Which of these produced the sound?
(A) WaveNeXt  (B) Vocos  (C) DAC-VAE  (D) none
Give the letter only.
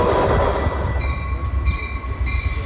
D